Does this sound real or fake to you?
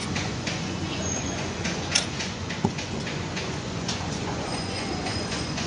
fake